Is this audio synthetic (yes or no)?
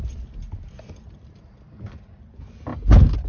no